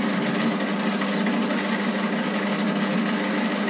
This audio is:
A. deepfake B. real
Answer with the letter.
B